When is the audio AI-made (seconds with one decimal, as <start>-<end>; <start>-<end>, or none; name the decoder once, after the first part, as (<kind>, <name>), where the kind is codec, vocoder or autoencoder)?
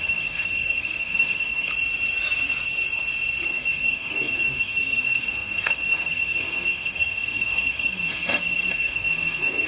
0.0-1.7 (codec, SNAC); 3.5-9.7